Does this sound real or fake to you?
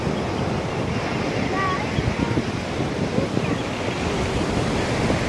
real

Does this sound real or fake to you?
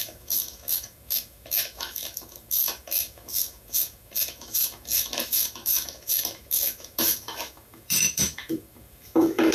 fake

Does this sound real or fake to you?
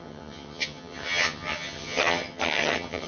fake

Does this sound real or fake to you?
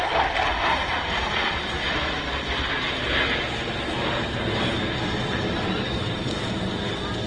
real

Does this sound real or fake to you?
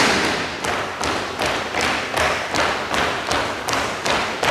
real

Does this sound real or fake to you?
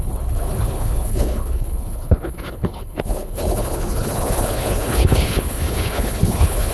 fake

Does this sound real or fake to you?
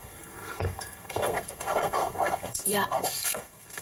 fake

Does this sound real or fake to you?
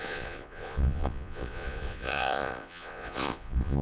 fake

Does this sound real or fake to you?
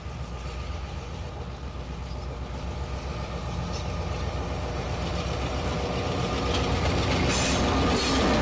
real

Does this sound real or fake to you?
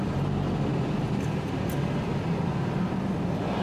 real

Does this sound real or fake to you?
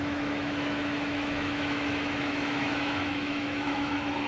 fake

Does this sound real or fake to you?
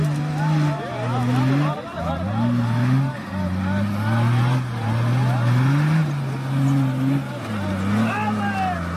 real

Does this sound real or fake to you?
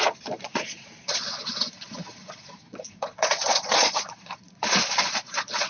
fake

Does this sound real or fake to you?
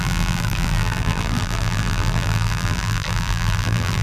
fake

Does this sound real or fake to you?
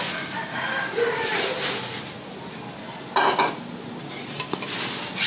real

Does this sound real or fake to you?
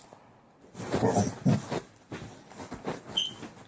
real